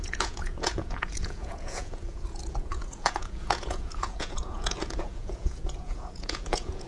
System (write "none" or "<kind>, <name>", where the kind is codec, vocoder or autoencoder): vocoder, Vocos